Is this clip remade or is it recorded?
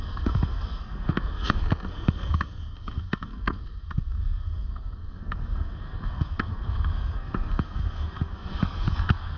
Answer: remade